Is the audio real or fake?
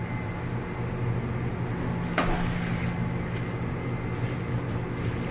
real